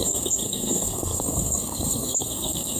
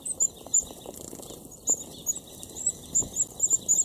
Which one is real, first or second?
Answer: second